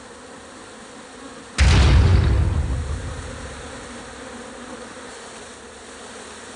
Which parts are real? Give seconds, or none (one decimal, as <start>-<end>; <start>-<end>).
0.0-6.6